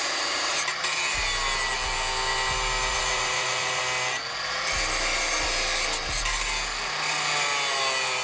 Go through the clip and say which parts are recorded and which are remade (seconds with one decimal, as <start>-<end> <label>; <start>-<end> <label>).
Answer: 0.0-2.9 recorded; 2.9-3.8 remade; 3.8-8.2 recorded